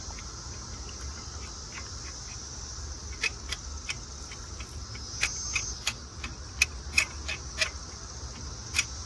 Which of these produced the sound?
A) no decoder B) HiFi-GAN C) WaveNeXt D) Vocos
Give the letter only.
A